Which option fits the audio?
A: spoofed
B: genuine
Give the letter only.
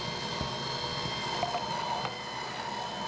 B